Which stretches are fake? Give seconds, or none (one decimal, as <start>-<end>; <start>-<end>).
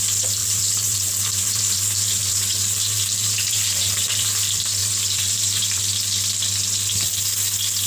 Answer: 0.4-4.3; 4.8-5.8